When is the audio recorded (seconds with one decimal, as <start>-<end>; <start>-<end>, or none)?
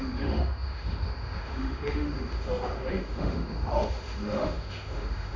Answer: none